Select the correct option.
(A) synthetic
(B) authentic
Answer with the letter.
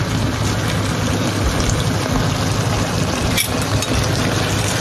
B